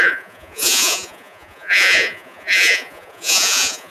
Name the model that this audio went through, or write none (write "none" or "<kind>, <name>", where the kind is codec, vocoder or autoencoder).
vocoder, Vocos